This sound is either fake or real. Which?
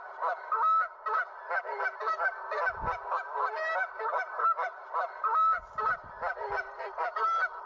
real